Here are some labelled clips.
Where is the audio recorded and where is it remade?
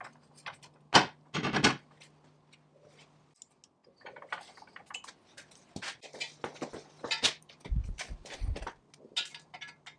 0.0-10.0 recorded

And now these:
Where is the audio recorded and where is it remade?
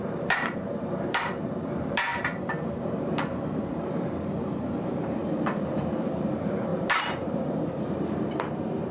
0.0-5.2 remade; 5.2-5.7 recorded; 5.7-8.9 remade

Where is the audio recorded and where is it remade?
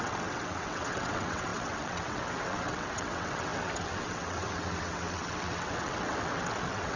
0.0-7.0 remade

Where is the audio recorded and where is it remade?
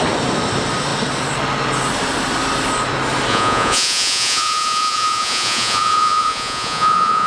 0.0-3.3 recorded; 3.3-7.3 remade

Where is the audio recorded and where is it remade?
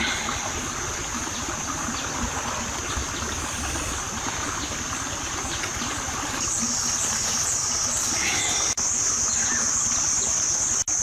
0.0-11.0 recorded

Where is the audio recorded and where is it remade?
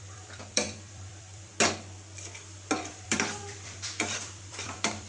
0.0-1.5 remade; 1.5-2.8 recorded; 2.8-5.1 remade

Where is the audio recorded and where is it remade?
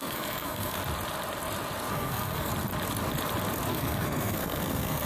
0.0-0.8 remade; 0.8-1.9 recorded; 1.9-2.5 remade; 2.5-3.7 recorded; 3.7-5.1 remade